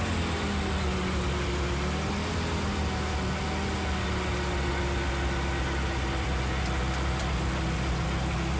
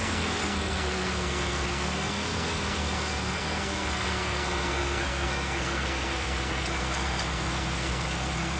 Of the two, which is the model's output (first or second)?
second